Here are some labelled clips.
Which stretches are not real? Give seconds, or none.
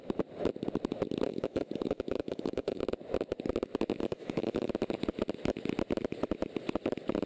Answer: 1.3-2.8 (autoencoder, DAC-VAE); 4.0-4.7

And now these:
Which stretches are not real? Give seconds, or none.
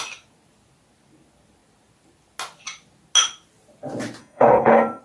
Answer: 4.2-5.0 (codec, SNAC)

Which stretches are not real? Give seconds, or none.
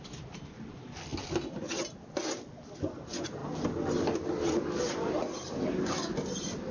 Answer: none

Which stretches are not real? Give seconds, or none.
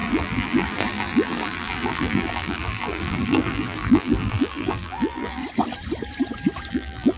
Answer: 0.0-5.4 (vocoder, BigVGAN v2); 6.7-7.2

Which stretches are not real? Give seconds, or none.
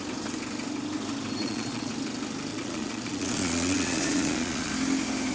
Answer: 1.4-1.9 (vocoder, Vocos); 2.5-4.7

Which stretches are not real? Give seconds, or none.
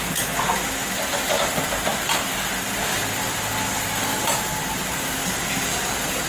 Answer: 1.1-3.9 (vocoder, BigVGAN v2)